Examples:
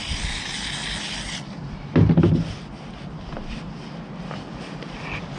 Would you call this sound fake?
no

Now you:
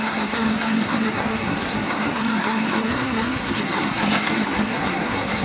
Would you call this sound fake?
yes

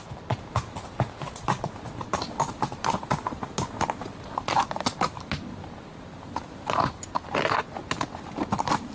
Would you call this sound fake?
no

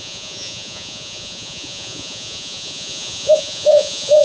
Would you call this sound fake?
yes